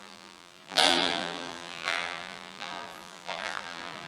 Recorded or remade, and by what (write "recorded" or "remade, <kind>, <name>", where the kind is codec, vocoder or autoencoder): remade, vocoder, BigVGAN v2